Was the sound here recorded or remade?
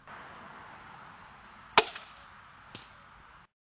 recorded